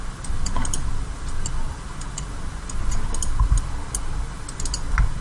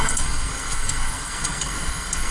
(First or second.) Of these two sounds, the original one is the first